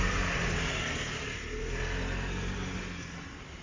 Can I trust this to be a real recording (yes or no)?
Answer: yes